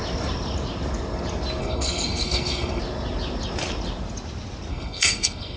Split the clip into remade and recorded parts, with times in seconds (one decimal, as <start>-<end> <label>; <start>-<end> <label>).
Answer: 0.0-1.6 recorded; 1.6-2.8 remade; 2.8-4.7 recorded; 4.7-5.6 remade